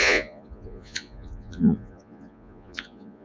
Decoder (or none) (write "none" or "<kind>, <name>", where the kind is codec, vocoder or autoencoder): vocoder, Vocos